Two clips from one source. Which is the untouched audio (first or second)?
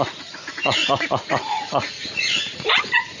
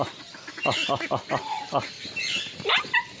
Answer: second